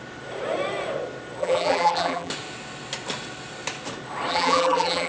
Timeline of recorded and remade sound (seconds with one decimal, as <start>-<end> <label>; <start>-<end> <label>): 0.0-1.4 recorded; 1.4-2.3 remade; 2.3-4.3 recorded; 4.3-5.1 remade

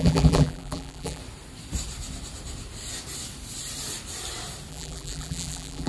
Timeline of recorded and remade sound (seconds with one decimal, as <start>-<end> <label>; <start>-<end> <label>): 0.0-1.2 remade; 1.2-4.7 recorded; 4.7-5.9 remade

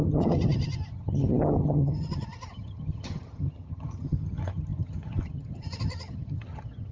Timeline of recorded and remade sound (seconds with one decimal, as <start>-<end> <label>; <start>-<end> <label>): 0.0-6.9 remade

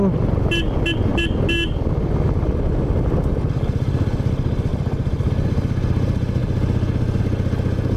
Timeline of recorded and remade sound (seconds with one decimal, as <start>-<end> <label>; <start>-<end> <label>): 0.0-4.7 recorded; 4.7-5.3 remade; 5.3-8.0 recorded

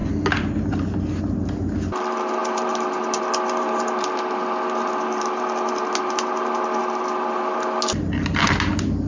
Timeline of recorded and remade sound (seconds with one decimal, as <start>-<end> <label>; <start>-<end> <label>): 0.0-9.1 recorded